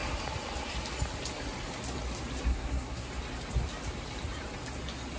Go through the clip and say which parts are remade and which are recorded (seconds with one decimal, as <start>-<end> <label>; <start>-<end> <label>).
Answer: 0.0-2.5 recorded; 2.5-3.1 remade; 3.1-5.2 recorded